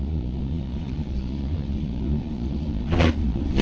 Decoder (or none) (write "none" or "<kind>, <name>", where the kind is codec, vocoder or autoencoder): vocoder, Vocos